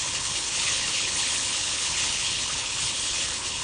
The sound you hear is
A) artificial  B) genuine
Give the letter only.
A